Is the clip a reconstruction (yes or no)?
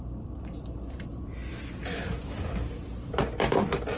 yes